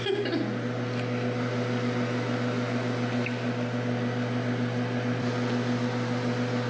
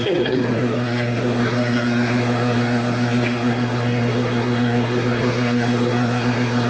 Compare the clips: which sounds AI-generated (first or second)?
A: second